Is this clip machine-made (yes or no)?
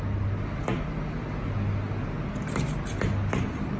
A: no